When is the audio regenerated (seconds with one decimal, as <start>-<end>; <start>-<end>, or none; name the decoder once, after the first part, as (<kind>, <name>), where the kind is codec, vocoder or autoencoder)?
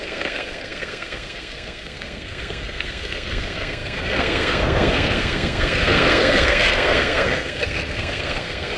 0.0-8.8 (codec, SNAC)